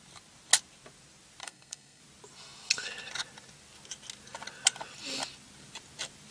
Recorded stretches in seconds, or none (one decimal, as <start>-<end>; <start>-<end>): 0.0-1.4; 2.0-6.3